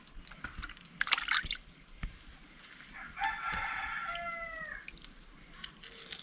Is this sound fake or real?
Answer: real